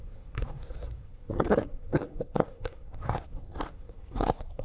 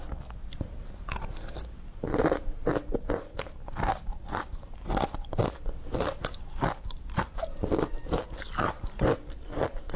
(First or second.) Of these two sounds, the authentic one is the second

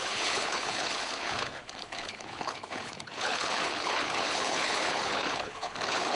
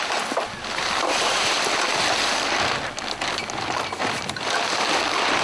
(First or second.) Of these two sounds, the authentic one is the second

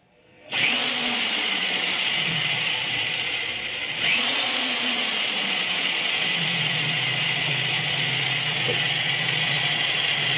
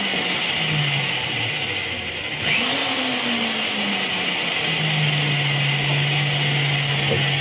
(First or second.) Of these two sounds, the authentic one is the second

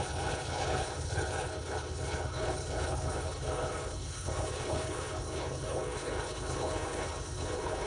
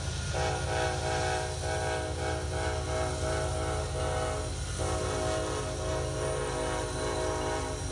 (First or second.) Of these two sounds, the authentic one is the second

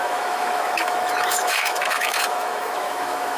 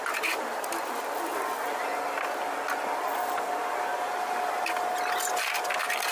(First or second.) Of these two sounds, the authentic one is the second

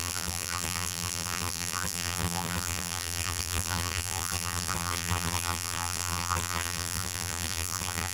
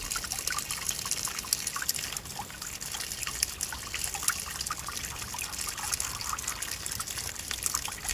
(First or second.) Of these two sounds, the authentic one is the second